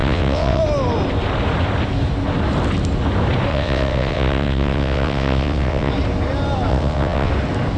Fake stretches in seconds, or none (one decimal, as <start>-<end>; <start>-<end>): 0.0-0.6; 3.5-5.9; 6.7-7.3